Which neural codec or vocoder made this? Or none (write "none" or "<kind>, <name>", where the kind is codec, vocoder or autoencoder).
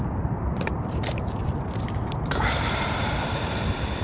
vocoder, BigVGAN v2